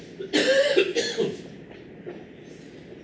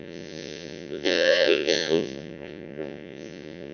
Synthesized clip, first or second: second